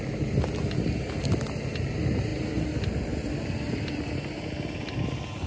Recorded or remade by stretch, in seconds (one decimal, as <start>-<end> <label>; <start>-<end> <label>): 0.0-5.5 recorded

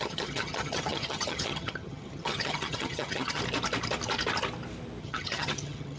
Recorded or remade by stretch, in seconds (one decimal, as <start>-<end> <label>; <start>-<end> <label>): 0.0-3.4 remade; 3.4-5.0 recorded; 5.0-6.0 remade

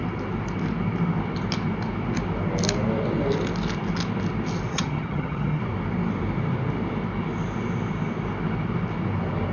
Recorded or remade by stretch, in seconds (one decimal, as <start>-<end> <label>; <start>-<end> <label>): 0.0-4.7 recorded; 4.7-5.6 remade; 5.6-9.5 recorded

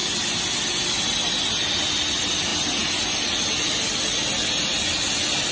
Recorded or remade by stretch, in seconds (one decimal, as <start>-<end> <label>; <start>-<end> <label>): 0.0-5.5 recorded